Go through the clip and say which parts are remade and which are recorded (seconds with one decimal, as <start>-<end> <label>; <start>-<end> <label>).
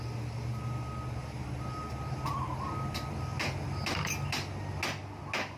0.0-1.2 recorded; 1.2-1.9 remade; 1.9-5.6 recorded